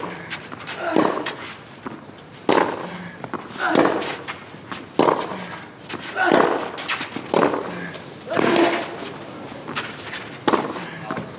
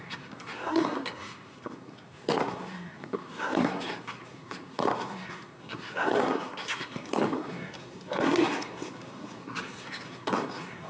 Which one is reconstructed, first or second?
second